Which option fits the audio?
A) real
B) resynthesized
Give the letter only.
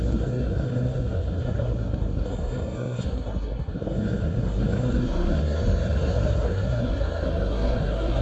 B